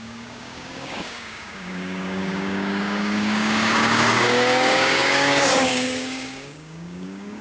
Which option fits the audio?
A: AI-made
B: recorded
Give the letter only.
A